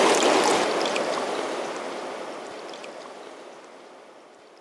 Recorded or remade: recorded